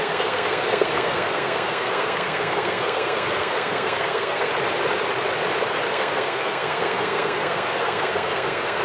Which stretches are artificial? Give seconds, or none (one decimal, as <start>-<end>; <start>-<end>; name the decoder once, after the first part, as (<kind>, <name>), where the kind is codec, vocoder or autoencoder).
0.0-4.5 (codec, SNAC); 5.9-8.8